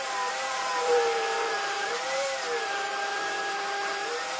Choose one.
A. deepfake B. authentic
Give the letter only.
A